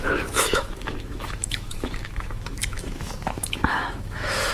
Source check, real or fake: fake